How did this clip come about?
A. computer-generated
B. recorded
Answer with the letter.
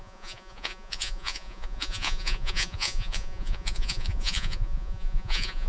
A